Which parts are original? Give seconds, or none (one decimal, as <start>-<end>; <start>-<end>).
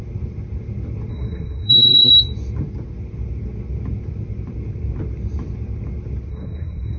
0.0-1.1; 2.1-6.3